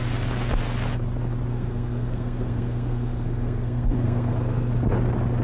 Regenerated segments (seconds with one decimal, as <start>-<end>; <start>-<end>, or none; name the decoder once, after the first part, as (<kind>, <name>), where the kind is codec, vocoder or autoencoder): 1.5-4.7 (codec, SNAC)